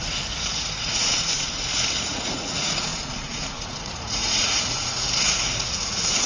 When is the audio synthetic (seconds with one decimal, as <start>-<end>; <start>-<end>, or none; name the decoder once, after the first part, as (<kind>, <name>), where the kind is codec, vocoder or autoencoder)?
0.0-6.3 (vocoder, Vocos)